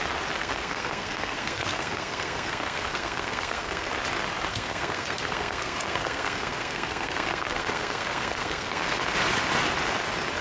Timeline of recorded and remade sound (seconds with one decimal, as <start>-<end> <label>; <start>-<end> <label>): 0.0-0.4 recorded; 0.4-3.9 remade; 3.9-4.5 recorded; 4.5-9.0 remade; 9.0-10.4 recorded